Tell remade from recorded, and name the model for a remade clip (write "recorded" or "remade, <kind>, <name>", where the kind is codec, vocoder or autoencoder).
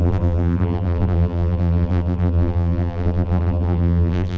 remade, vocoder, BigVGAN v2